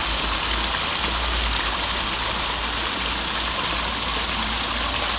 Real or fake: real